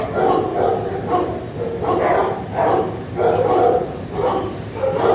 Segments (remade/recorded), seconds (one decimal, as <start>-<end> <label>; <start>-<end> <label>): 0.0-0.5 recorded; 0.5-1.3 remade; 1.3-2.2 recorded; 2.2-5.1 remade